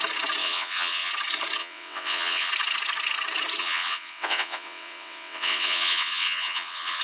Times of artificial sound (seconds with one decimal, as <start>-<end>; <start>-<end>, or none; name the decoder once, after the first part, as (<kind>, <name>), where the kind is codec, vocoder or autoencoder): 0.4-1.1 (vocoder, WaveNeXt); 1.6-2.5; 3.6-7.0